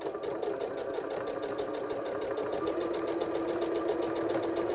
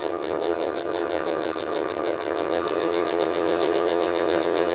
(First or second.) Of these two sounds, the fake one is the second